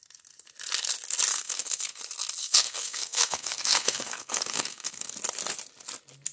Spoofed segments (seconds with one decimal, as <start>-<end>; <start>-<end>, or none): 1.3-2.0; 2.4-5.1